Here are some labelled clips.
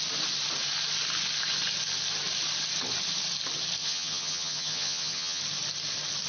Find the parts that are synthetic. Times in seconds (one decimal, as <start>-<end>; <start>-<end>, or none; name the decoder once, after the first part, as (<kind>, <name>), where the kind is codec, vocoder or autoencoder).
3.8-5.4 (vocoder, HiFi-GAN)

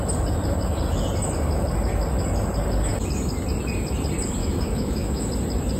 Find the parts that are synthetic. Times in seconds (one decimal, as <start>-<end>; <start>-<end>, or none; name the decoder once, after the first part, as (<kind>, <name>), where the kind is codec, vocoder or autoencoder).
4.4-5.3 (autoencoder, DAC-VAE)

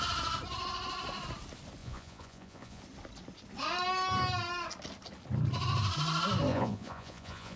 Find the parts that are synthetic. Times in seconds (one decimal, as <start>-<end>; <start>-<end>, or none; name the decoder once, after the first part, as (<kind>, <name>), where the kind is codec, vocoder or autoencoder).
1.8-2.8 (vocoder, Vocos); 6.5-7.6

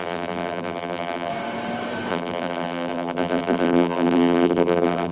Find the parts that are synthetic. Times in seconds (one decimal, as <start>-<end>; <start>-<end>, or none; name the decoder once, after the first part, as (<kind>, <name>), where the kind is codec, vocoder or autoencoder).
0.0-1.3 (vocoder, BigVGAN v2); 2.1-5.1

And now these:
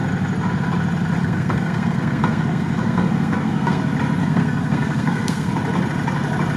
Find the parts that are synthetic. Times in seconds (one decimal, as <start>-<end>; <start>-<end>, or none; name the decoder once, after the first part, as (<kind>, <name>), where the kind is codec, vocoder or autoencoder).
1.2-3.8 (codec, SNAC); 4.2-5.5

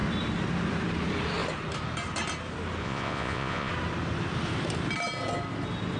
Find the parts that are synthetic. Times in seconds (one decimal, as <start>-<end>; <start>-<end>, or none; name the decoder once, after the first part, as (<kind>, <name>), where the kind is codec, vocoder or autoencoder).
2.8-3.7 (vocoder, Vocos)